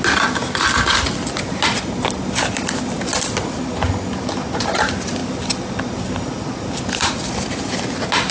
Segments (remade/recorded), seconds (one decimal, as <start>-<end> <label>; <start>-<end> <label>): 0.0-8.3 recorded